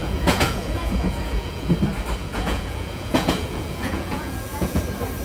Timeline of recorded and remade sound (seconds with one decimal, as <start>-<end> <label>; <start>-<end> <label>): 0.0-1.7 remade; 1.7-2.2 recorded; 2.2-4.8 remade; 4.8-5.2 recorded